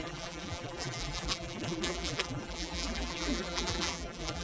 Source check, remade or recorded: remade